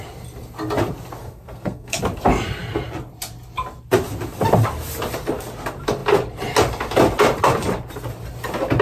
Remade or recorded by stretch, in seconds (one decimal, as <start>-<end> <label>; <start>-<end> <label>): 0.0-1.2 recorded; 1.2-2.0 remade; 2.0-8.8 recorded